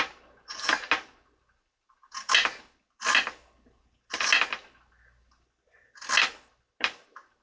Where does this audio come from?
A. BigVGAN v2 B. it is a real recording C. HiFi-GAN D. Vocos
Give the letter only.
B